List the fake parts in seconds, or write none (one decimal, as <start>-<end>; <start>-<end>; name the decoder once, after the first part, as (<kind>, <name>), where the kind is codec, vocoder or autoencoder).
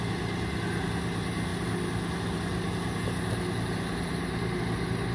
none